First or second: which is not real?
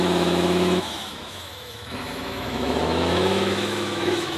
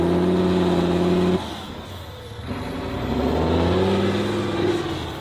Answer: first